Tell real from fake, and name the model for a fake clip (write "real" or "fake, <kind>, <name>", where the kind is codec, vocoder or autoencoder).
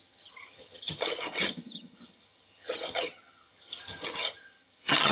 fake, vocoder, HiFi-GAN